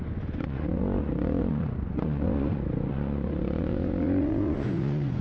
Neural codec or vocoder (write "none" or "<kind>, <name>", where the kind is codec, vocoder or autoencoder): vocoder, Vocos